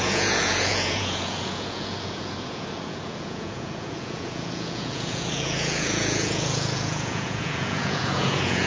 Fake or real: fake